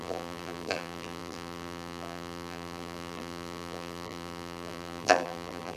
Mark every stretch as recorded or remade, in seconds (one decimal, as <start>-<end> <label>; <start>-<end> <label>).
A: 0.0-5.8 remade